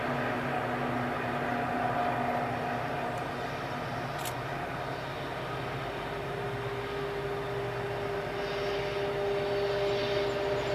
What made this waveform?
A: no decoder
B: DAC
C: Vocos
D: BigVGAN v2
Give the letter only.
A